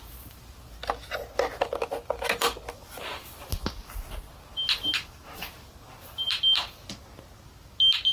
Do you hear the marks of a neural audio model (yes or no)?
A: no